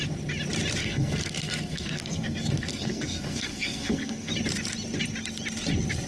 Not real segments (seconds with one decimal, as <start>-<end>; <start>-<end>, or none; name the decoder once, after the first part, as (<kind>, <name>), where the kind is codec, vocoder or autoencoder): 0.8-4.3 (codec, SNAC)